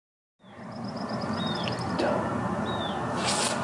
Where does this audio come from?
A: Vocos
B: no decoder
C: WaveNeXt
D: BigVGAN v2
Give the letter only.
B